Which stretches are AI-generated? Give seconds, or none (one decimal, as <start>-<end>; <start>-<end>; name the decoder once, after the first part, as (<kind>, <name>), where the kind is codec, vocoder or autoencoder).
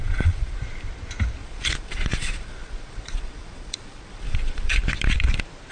0.0-0.6 (vocoder, Vocos); 1.4-4.8